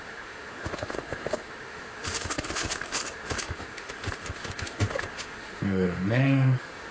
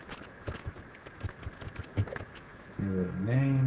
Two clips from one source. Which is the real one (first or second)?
second